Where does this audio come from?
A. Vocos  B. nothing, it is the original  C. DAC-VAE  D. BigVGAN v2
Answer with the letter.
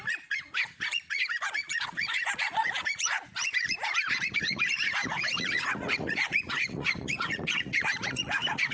A